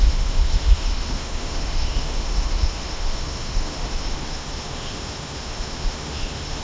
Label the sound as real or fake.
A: fake